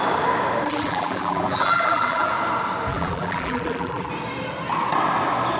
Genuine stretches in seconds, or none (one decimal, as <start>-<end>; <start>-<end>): 0.0-0.7; 2.3-2.9; 4.1-5.6